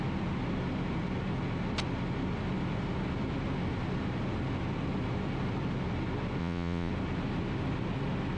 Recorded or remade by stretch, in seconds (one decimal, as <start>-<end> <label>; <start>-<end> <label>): 0.0-6.4 recorded; 6.4-6.9 remade; 6.9-8.4 recorded